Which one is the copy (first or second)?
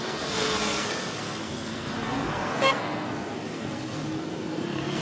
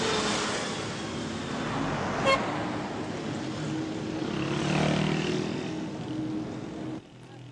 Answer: first